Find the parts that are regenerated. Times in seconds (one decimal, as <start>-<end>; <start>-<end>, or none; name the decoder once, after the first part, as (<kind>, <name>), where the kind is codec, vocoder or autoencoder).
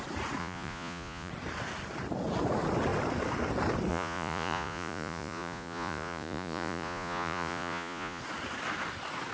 0.4-1.3 (vocoder, Vocos); 3.9-8.2